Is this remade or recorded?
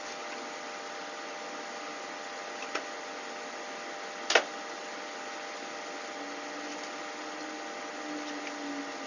recorded